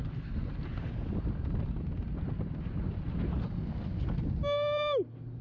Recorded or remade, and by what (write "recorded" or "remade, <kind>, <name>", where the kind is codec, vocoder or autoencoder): recorded